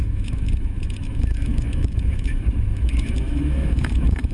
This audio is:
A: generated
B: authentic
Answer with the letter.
A